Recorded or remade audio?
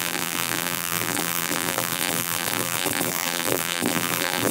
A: remade